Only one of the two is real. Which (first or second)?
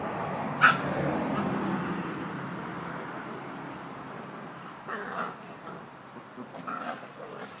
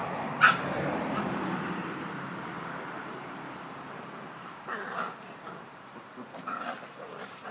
first